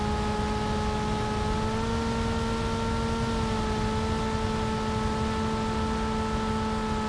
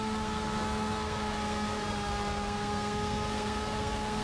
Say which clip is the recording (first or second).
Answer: first